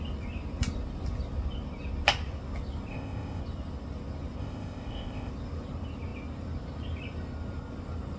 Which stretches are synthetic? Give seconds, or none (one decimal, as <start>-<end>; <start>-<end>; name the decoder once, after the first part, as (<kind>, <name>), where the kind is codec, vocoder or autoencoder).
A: 2.9-3.4 (codec, ZipCodec); 4.4-5.3